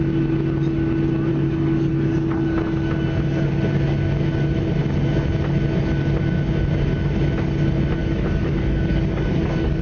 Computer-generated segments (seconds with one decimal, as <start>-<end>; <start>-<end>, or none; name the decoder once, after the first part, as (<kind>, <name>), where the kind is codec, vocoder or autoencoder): 1.3-1.9 (codec, DAC); 8.0-9.8

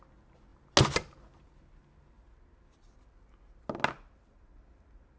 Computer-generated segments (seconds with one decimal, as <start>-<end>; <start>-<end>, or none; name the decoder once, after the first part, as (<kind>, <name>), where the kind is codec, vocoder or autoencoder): none

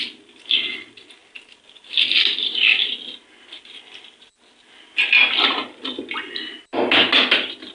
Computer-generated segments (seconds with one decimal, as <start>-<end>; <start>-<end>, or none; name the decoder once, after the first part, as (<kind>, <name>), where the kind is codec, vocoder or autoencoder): none

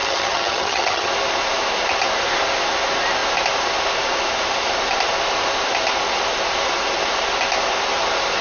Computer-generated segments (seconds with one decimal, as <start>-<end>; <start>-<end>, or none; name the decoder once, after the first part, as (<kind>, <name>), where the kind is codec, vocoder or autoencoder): 0.0-1.1 (vocoder, HiFi-GAN)

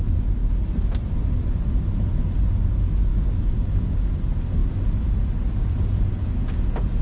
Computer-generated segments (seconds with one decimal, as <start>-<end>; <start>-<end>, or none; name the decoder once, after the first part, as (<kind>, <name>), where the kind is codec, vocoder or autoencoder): 3.1-4.1 (codec, DAC)

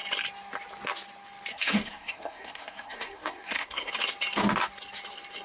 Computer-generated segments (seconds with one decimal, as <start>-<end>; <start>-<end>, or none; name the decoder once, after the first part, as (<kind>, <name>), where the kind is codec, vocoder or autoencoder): 1.5-3.9 (codec, SNAC)